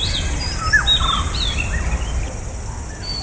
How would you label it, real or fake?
real